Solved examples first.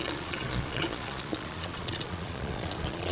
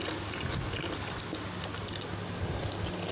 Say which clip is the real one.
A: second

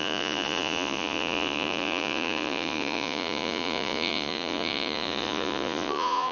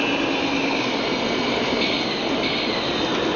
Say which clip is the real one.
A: second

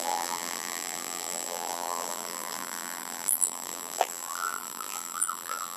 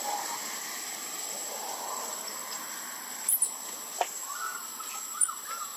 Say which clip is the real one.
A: second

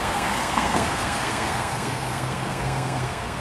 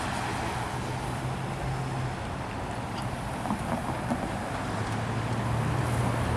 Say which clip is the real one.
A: second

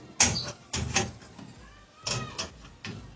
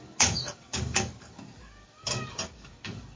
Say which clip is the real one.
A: first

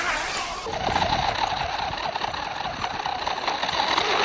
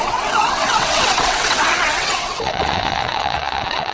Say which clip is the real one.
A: first